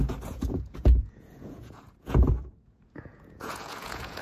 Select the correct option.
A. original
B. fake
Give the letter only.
B